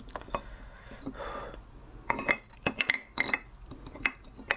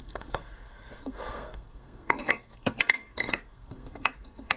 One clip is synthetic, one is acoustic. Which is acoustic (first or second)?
first